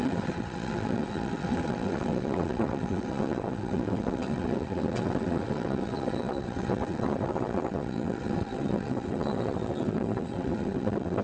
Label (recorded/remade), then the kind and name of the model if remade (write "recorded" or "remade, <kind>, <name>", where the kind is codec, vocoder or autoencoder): remade, vocoder, WaveNeXt